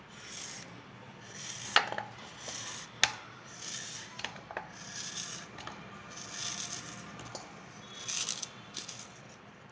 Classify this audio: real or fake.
real